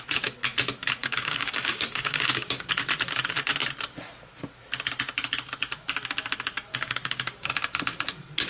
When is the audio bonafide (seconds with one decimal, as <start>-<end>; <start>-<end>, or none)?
0.0-1.0; 2.7-6.7; 7.5-8.5